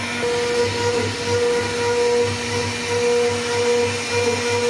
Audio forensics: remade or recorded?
recorded